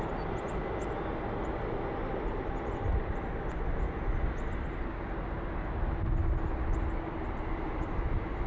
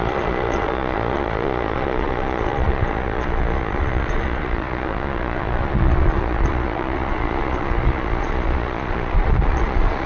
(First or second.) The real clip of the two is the first